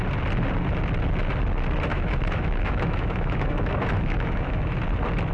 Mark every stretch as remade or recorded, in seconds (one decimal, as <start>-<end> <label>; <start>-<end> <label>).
0.0-1.9 recorded; 1.9-4.8 remade; 4.8-5.3 recorded